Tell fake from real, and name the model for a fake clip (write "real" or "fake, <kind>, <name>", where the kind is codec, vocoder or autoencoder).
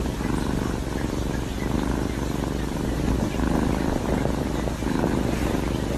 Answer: real